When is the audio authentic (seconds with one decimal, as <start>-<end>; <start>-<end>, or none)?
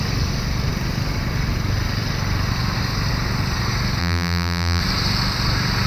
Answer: 0.0-4.0; 4.8-5.9